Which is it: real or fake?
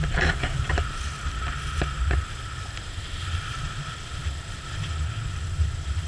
real